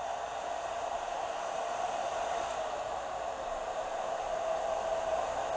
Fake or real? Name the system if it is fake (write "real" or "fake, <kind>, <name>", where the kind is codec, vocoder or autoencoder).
fake, vocoder, BigVGAN v2